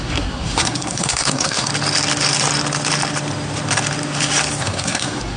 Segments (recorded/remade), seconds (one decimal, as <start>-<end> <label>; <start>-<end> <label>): 0.0-1.7 remade; 1.7-4.6 recorded; 4.6-5.4 remade